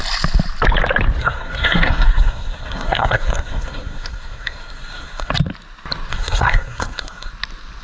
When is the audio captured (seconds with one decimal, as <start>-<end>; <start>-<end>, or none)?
0.0-1.2; 5.3-6.1; 7.3-7.8